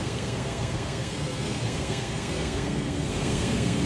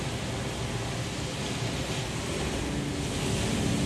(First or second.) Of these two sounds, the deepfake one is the first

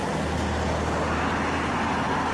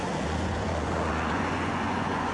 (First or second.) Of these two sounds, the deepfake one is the second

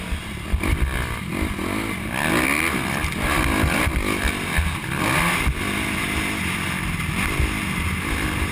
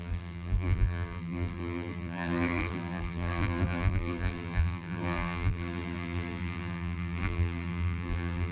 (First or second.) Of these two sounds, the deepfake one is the second